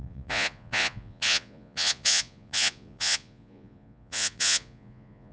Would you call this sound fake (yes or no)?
yes